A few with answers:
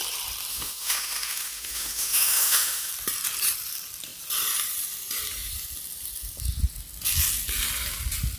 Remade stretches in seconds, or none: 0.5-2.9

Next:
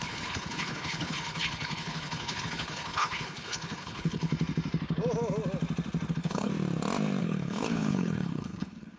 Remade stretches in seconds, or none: 0.0-4.3; 6.1-6.5; 7.2-9.0

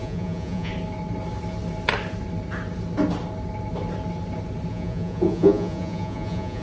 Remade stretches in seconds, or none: 0.0-0.7; 4.7-6.6

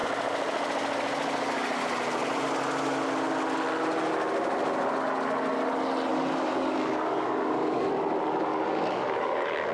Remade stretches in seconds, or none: 6.1-7.9; 8.5-9.7

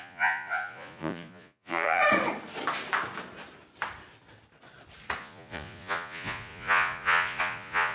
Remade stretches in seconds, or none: 0.0-2.0; 5.2-7.9